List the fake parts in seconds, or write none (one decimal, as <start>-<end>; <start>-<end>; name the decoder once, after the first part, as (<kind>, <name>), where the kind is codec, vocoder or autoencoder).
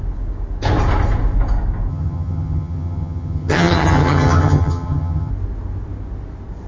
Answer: 1.9-5.3 (vocoder, HiFi-GAN)